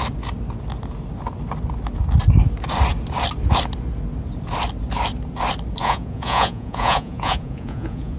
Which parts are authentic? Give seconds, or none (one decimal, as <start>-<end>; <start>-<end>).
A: 0.0-5.8